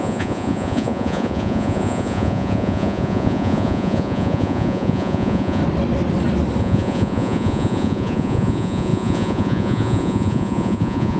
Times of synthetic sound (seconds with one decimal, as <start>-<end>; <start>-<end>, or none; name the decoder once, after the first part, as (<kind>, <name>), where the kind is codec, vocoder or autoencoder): 0.0-5.6 (vocoder, Vocos); 6.6-11.2